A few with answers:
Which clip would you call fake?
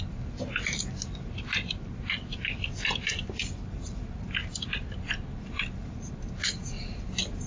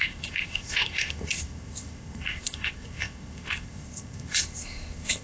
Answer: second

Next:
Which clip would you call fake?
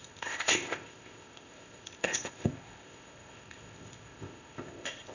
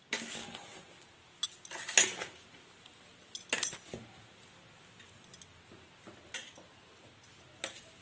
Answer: first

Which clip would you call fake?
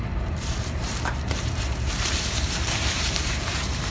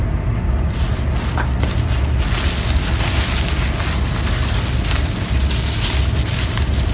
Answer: first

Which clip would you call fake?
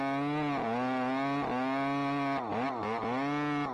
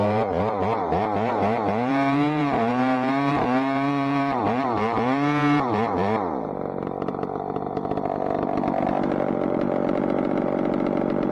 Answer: second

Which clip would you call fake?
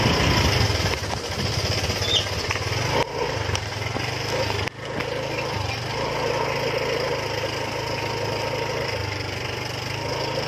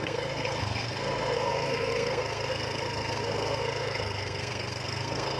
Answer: second